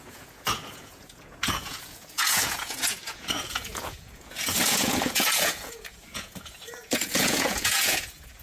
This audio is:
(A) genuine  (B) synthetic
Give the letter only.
B